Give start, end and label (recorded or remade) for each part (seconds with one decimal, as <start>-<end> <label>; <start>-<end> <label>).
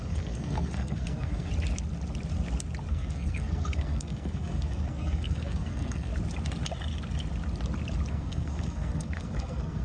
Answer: 0.0-1.5 remade; 1.5-2.9 recorded; 2.9-6.1 remade; 6.1-8.1 recorded; 8.1-9.8 remade